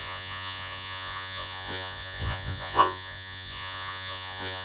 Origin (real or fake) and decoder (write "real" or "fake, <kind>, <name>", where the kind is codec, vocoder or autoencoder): fake, vocoder, Vocos